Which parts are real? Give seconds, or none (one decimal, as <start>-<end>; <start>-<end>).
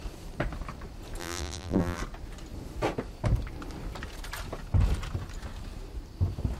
0.0-1.2; 2.0-6.6